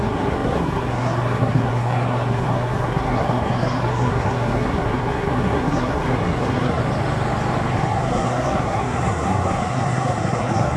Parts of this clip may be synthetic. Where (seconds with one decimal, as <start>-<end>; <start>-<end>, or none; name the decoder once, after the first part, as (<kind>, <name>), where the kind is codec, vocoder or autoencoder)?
0.0-6.8 (codec, SNAC); 7.7-10.8